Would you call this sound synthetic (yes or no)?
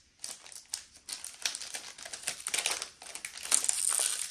no